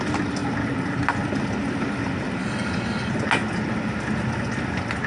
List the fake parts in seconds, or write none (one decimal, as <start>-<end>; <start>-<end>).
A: 2.4-3.1